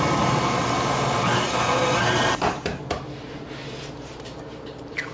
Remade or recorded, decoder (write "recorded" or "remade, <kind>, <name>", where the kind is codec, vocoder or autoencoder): remade, vocoder, BigVGAN v2